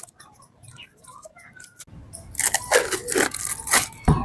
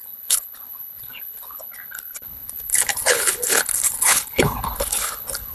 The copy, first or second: second